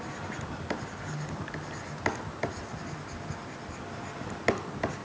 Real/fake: real